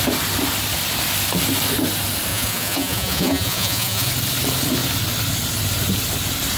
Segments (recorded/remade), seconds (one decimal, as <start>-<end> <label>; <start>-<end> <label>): 0.0-2.3 recorded; 2.3-4.1 remade; 4.1-6.6 recorded